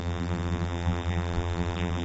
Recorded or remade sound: remade